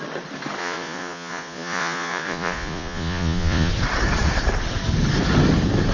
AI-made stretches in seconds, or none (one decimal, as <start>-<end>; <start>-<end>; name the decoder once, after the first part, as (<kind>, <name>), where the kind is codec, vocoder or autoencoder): 0.6-3.7 (vocoder, Vocos)